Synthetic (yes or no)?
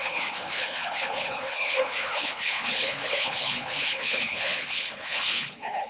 yes